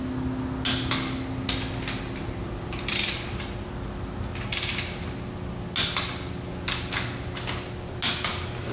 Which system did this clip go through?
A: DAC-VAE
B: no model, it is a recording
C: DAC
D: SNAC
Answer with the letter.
B